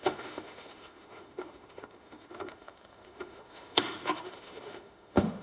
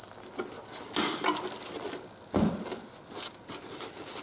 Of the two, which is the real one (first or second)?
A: second